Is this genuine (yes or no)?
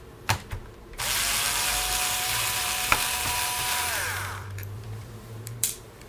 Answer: no